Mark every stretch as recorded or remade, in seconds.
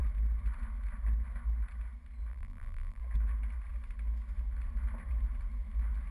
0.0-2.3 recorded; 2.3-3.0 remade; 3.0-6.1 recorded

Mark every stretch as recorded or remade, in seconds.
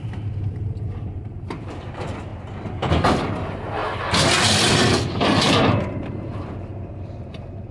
0.0-2.3 remade; 2.3-3.3 recorded; 3.3-3.8 remade; 3.8-5.5 recorded; 5.5-7.7 remade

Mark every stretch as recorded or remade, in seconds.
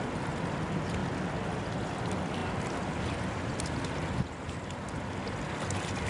0.0-6.1 recorded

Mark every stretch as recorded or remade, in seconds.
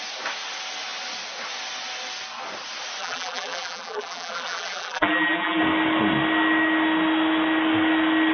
0.0-3.0 recorded; 3.0-5.6 remade; 5.6-8.3 recorded